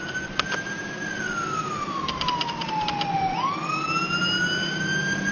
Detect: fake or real real